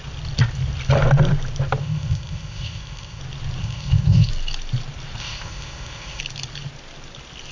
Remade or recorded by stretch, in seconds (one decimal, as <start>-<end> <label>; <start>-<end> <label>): 0.0-1.8 recorded; 1.8-3.2 remade; 3.2-3.6 recorded; 3.6-4.3 remade; 4.3-5.2 recorded; 5.2-6.2 remade; 6.2-7.5 recorded